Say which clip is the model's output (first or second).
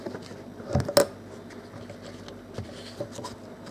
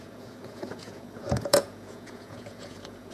second